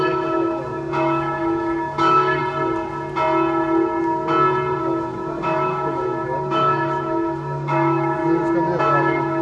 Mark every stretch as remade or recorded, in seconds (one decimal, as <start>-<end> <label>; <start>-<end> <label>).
0.0-2.4 remade; 2.4-4.8 recorded; 4.8-8.2 remade; 8.2-8.8 recorded; 8.8-9.4 remade